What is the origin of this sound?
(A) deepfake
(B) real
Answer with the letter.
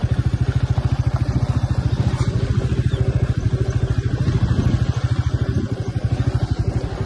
B